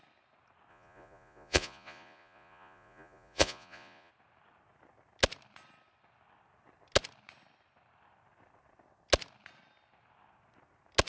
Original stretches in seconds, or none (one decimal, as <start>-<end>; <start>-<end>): 0.0-0.7; 4.1-11.1